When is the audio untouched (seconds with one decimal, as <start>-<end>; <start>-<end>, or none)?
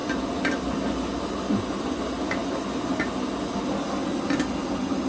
0.0-5.1